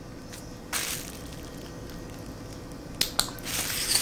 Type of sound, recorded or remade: recorded